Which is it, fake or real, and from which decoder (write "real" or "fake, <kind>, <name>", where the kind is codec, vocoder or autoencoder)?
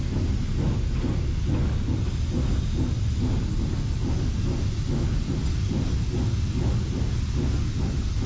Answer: real